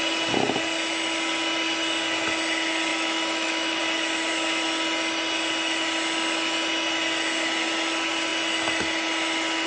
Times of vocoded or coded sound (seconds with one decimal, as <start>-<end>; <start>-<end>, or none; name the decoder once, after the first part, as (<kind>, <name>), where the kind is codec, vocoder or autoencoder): 2.9-3.8 (autoencoder, DAC-VAE)

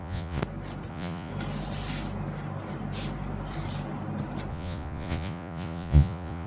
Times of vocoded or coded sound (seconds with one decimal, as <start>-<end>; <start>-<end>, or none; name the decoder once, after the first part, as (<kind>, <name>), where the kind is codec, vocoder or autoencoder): 0.0-0.4 (vocoder, Vocos); 0.9-1.3; 4.5-6.5

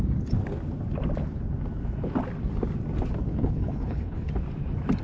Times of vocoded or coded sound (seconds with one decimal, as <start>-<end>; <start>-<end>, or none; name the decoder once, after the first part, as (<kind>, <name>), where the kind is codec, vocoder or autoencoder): 3.3-4.3 (codec, HILCodec)

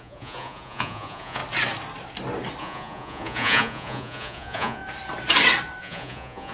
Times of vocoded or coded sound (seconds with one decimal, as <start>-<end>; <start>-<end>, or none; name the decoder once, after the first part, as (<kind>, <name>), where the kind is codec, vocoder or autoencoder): 0.0-1.4 (vocoder, Vocos); 2.6-4.8; 5.8-6.5

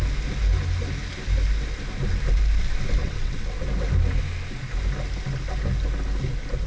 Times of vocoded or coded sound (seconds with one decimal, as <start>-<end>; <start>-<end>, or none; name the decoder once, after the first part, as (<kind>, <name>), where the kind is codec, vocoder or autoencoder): 3.0-3.6 (vocoder, WaveNeXt)